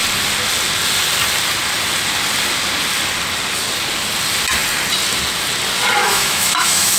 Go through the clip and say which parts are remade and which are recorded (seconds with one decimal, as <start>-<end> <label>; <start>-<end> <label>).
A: 0.0-6.0 recorded; 6.0-7.0 remade